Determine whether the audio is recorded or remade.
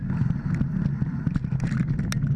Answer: recorded